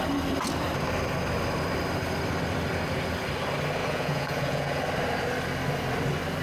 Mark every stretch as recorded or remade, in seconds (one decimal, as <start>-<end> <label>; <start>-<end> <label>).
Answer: 0.0-3.8 recorded; 3.8-4.8 remade; 4.8-6.4 recorded